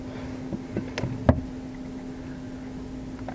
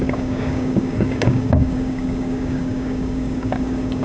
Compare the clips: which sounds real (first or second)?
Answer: first